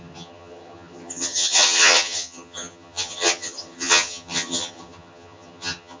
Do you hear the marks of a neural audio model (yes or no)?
yes